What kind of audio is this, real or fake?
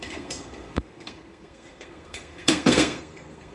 fake